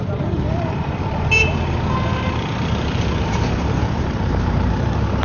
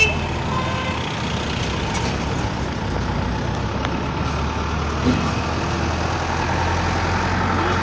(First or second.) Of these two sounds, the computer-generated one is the first